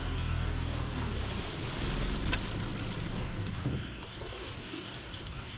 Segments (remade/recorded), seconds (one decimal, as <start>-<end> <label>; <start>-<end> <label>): 0.0-1.2 remade; 1.2-3.1 recorded; 3.1-5.6 remade